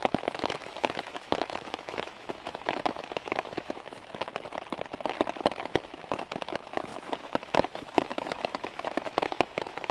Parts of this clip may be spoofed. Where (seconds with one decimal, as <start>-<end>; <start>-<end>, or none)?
0.0-4.3; 5.6-9.9